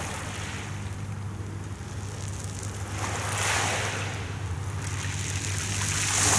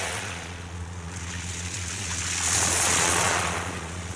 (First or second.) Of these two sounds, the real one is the first